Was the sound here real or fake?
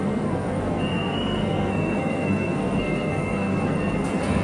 fake